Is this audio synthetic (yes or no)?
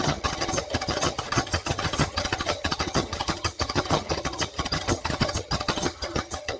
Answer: yes